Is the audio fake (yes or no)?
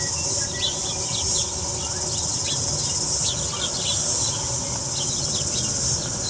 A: no